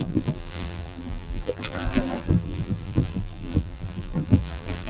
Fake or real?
fake